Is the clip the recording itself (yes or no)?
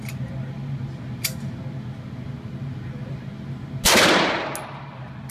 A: yes